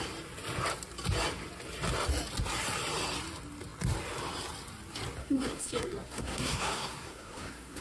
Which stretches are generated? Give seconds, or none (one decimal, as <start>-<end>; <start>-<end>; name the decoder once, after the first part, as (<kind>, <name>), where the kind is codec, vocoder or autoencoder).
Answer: 5.2-7.8 (codec, SNAC)